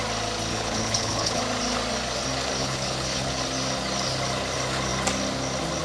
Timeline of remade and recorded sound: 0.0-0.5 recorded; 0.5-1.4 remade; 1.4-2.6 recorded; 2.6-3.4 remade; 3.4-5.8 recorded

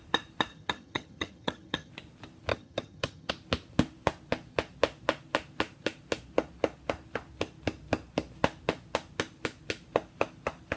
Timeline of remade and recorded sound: 0.0-0.5 recorded; 0.5-1.9 remade; 1.9-2.5 recorded; 2.5-3.3 remade; 3.3-10.8 recorded

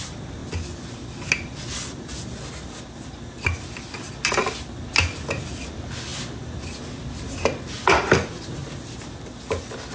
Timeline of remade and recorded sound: 0.0-9.9 recorded

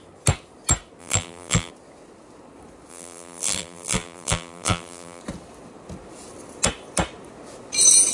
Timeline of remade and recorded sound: 0.0-1.0 recorded; 1.0-1.7 remade; 1.7-2.9 recorded; 2.9-5.2 remade; 5.2-8.1 recorded

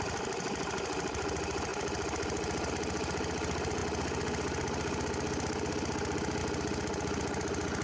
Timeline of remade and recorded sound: 0.0-7.8 recorded

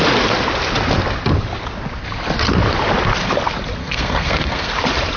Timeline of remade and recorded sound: 0.0-3.8 recorded; 3.8-4.7 remade; 4.7-5.2 recorded